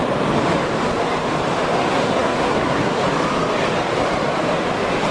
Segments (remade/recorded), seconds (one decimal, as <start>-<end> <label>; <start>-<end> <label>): 0.0-1.9 recorded; 1.9-3.0 remade; 3.0-5.1 recorded